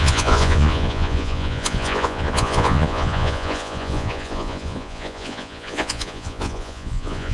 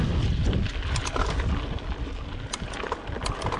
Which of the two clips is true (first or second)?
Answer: second